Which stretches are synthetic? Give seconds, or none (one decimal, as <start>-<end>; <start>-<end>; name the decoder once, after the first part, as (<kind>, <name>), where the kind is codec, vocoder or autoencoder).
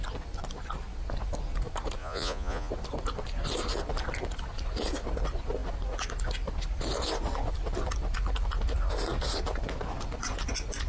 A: 2.0-2.7 (vocoder, Vocos)